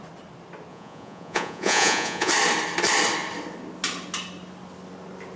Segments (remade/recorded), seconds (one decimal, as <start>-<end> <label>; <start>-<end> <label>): 0.0-0.7 recorded; 0.7-2.3 remade; 2.3-5.4 recorded